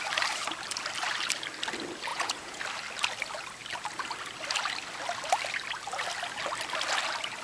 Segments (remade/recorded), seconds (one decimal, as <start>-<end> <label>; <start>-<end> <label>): 0.0-2.1 recorded; 2.1-2.6 remade; 2.6-7.4 recorded